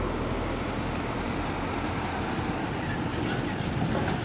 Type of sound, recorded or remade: recorded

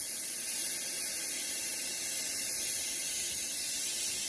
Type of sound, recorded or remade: recorded